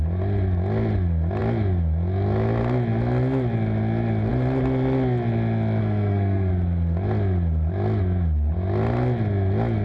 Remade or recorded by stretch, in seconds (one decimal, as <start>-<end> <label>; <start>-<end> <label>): 0.0-5.8 recorded; 5.8-6.5 remade; 6.5-9.8 recorded